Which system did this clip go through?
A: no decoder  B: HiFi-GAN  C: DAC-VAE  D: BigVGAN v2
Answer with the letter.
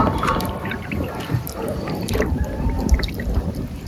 D